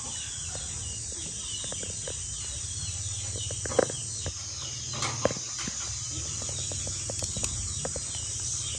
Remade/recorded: recorded